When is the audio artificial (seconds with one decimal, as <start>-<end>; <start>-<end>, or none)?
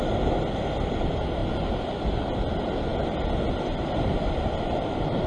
none